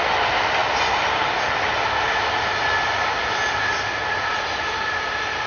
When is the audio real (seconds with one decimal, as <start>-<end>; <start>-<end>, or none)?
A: 0.0-5.5